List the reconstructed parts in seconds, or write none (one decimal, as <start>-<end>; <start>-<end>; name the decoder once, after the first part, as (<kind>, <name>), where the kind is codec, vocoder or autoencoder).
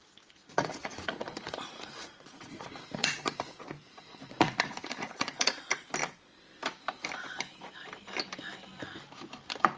0.4-5.5 (vocoder, Vocos)